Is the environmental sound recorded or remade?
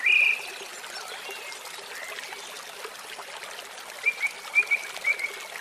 recorded